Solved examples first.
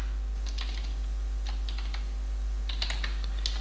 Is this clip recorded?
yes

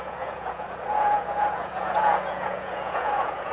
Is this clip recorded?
no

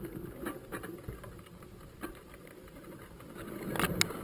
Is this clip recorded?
yes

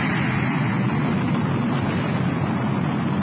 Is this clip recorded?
yes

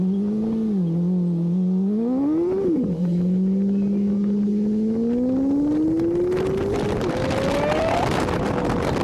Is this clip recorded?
yes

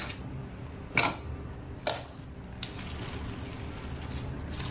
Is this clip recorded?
yes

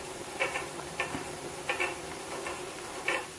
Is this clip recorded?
no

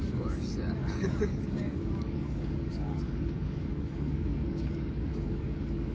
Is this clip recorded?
no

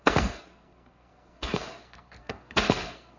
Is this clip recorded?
no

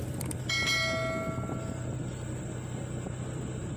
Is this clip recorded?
yes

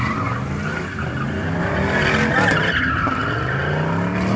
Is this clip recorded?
yes